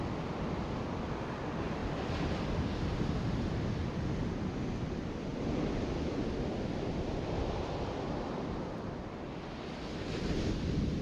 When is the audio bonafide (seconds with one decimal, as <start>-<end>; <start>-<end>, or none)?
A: 0.0-11.0

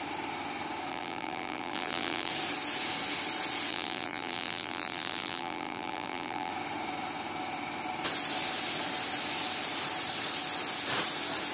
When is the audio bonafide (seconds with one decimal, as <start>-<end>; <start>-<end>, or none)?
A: 0.0-0.9; 2.3-3.7; 6.5-11.5

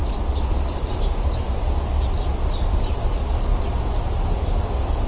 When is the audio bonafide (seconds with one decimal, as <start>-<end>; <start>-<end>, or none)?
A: 0.0-3.1; 3.5-4.4

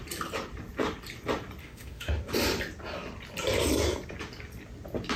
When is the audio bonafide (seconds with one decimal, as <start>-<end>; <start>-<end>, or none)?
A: 0.0-1.6; 2.2-5.2

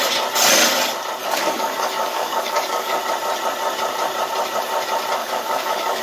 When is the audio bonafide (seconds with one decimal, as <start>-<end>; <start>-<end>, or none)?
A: 0.0-1.2; 3.0-5.2

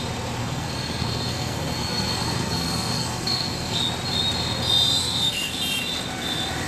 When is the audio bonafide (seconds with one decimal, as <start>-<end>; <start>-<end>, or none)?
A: 0.0-0.4; 3.8-5.0; 5.6-6.7